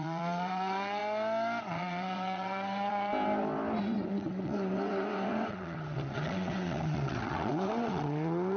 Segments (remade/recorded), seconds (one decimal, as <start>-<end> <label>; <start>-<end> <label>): 0.0-1.0 remade; 1.0-1.6 recorded; 1.6-3.1 remade; 3.1-3.8 recorded; 3.8-8.6 remade